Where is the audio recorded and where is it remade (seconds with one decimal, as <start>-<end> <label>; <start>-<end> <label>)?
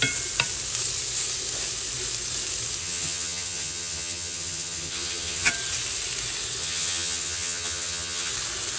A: 0.0-2.8 recorded; 2.8-5.5 remade; 5.5-6.6 recorded; 6.6-8.3 remade; 8.3-8.8 recorded